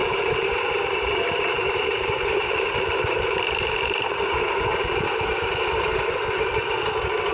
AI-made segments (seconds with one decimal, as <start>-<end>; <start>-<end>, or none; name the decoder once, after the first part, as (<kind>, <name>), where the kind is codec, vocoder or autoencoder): 0.0-4.4 (vocoder, BigVGAN v2)